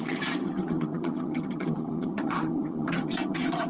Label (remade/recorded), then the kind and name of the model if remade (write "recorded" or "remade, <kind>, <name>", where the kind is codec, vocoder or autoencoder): remade, vocoder, HiFi-GAN